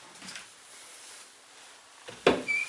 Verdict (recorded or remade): recorded